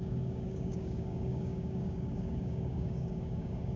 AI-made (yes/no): yes